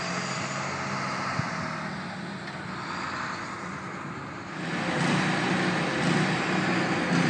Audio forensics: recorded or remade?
recorded